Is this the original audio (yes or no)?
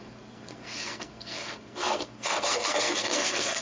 no